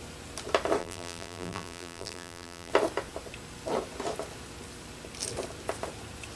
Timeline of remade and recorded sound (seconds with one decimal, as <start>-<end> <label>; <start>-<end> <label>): 0.0-0.8 recorded; 0.8-2.7 remade; 2.7-6.4 recorded